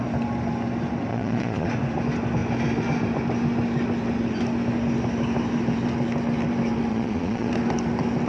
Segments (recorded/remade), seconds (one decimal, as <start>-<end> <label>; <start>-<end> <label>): 0.0-1.1 recorded; 1.1-1.7 remade; 1.7-6.9 recorded; 6.9-7.5 remade; 7.5-8.3 recorded